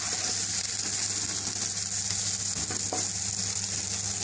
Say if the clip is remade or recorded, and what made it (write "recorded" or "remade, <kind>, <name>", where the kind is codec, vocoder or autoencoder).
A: recorded